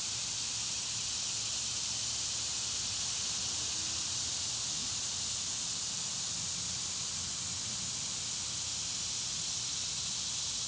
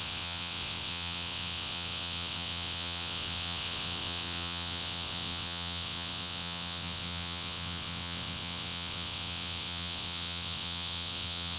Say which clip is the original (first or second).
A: first